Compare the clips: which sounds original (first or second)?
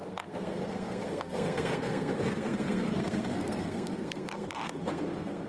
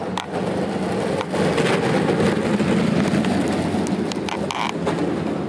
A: second